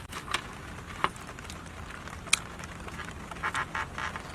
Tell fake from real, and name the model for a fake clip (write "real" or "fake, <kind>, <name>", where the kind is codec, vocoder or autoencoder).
real